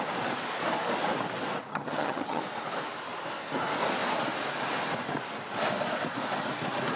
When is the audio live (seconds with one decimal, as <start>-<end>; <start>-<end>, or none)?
0.0-1.7; 2.4-7.0